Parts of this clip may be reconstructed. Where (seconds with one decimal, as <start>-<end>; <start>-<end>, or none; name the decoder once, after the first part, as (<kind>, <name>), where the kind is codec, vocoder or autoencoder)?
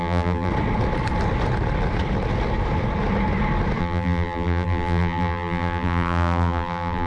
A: 0.0-0.5 (vocoder, BigVGAN v2); 3.8-7.1